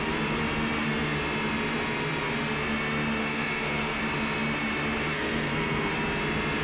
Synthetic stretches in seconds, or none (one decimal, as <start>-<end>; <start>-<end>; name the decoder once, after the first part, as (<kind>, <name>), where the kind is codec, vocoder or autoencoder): 3.2-4.0 (codec, SNAC); 5.1-5.9